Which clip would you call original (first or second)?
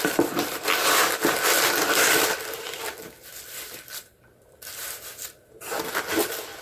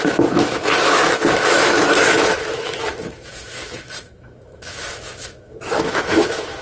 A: first